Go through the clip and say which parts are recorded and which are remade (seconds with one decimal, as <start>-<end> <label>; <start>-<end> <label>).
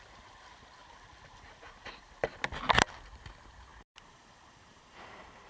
0.0-0.8 recorded; 0.8-2.1 remade; 2.1-3.7 recorded; 3.7-5.5 remade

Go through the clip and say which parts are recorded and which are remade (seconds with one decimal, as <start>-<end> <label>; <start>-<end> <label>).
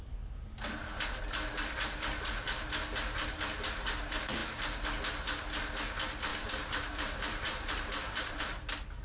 0.0-6.3 recorded; 6.3-8.4 remade; 8.4-9.0 recorded